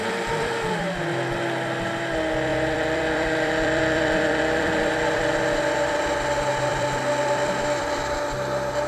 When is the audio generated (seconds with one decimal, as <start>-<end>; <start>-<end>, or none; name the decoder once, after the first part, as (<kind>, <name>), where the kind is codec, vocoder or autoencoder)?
0.0-0.8 (vocoder, BigVGAN v2); 2.5-6.0; 6.7-8.0